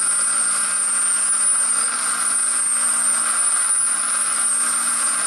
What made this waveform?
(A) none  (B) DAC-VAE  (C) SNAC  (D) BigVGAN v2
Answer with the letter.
A